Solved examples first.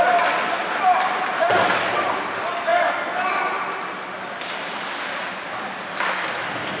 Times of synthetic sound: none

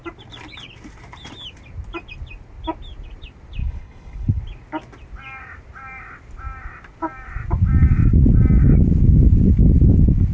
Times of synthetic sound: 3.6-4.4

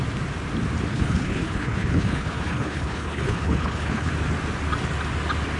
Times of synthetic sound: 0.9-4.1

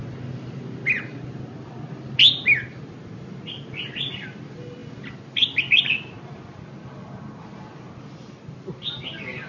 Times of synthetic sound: none